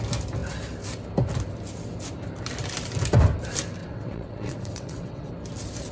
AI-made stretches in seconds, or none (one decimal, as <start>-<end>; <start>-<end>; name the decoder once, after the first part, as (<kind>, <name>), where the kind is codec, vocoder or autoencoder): 3.8-5.3 (vocoder, WaveNeXt)